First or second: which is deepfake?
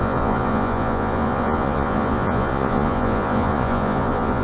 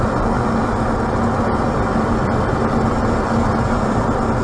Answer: first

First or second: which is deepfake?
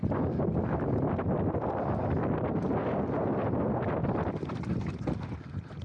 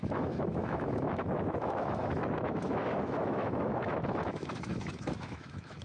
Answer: second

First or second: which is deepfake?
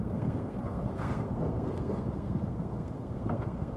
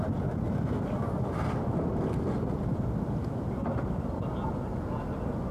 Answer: first